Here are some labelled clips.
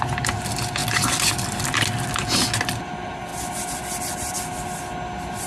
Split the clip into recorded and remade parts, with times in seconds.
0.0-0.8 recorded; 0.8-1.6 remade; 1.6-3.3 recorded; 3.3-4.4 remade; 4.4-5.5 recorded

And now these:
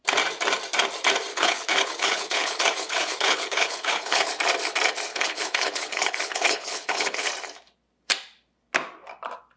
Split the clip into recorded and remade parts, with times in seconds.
0.0-1.3 recorded; 1.3-4.3 remade; 4.3-5.1 recorded; 5.1-7.3 remade; 7.3-9.6 recorded

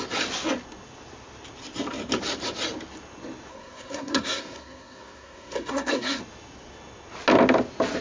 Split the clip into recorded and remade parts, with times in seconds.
0.0-3.5 recorded; 3.5-6.2 remade; 6.2-8.0 recorded

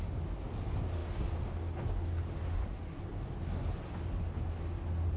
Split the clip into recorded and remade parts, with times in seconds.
0.0-5.2 recorded

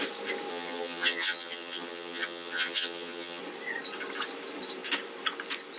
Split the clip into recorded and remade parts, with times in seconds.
0.0-0.5 recorded; 0.5-3.4 remade; 3.4-5.8 recorded